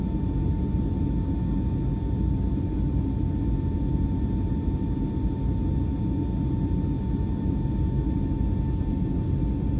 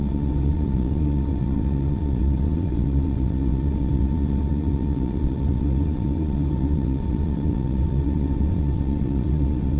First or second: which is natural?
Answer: first